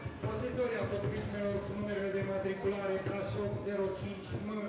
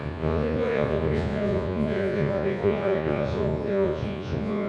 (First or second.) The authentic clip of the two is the first